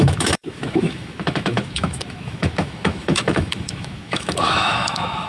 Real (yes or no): no